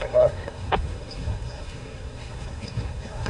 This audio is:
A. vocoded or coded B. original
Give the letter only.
A